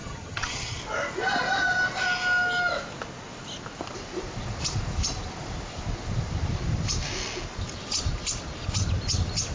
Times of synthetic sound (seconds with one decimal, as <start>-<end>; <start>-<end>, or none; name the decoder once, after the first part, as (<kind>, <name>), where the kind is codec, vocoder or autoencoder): 0.0-0.8 (vocoder, HiFi-GAN)